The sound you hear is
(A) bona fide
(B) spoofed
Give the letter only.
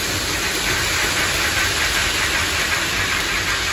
A